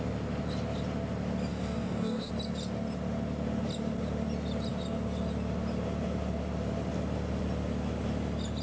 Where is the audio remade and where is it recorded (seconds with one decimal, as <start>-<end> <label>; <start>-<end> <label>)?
0.0-1.5 recorded; 1.5-2.3 remade; 2.3-8.6 recorded